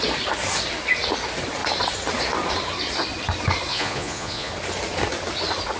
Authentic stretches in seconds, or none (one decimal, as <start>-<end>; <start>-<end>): 0.0-3.7; 4.5-5.8